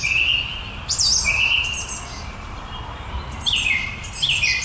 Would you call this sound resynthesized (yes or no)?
yes